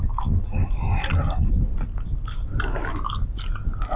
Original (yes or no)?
yes